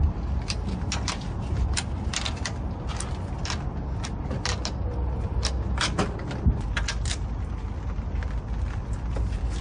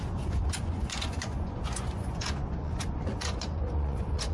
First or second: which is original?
first